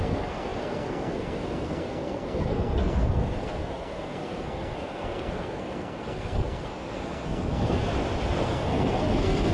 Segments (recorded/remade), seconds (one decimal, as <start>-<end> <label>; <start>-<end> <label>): 0.0-7.9 remade; 7.9-8.4 recorded; 8.4-9.5 remade